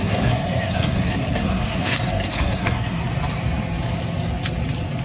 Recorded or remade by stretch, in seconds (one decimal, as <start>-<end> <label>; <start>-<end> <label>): 0.0-3.0 remade; 3.0-5.0 recorded